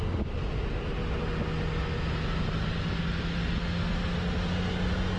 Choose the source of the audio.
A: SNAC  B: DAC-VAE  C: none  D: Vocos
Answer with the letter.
C